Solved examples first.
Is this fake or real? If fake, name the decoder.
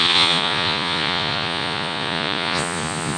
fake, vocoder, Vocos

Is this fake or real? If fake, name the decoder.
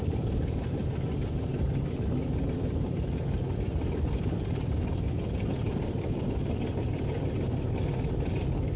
real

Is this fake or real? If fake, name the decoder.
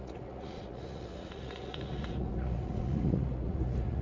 fake, vocoder, Vocos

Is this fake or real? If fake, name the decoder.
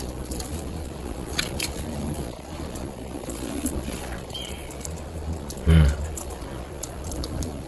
fake, vocoder, Vocos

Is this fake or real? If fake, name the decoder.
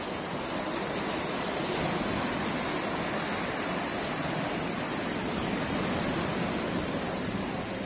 real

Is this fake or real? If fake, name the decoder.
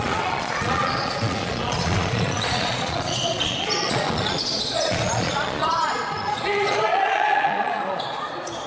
fake, vocoder, Vocos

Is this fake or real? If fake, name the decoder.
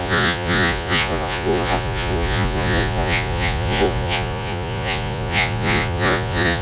fake, vocoder, Vocos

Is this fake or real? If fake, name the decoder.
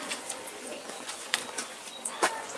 fake, vocoder, Vocos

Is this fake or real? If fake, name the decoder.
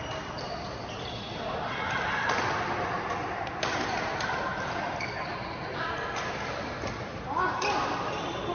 real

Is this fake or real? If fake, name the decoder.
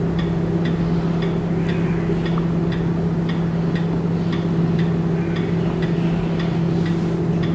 real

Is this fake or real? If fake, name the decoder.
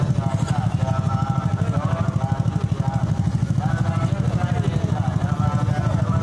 real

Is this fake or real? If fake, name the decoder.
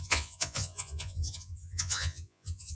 fake, vocoder, Vocos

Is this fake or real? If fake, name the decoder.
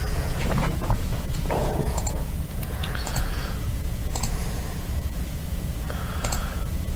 fake, vocoder, Vocos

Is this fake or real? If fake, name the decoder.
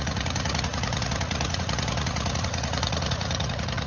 fake, vocoder, Vocos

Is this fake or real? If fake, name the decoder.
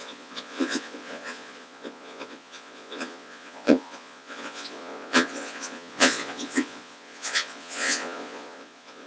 fake, vocoder, Vocos